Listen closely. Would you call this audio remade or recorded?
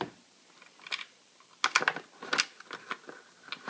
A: recorded